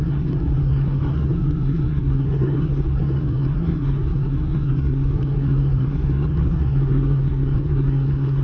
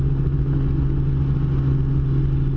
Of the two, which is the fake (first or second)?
first